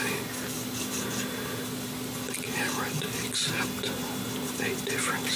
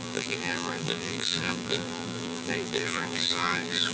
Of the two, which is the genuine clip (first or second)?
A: first